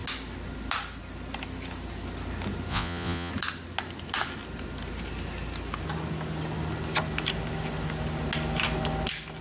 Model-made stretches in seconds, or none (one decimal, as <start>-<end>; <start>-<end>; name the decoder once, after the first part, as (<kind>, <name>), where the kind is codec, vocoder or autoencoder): 2.7-3.3 (vocoder, Vocos)